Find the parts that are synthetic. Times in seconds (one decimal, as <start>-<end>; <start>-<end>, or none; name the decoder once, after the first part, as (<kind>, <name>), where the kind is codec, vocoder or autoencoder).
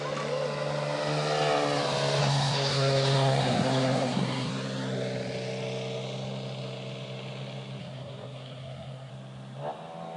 2.2-4.5 (codec, SNAC); 7.8-9.1